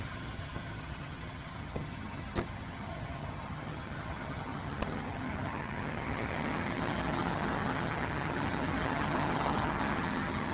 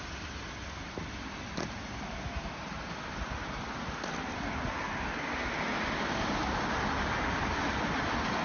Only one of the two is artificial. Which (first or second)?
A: first